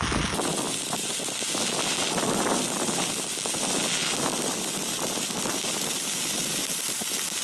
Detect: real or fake real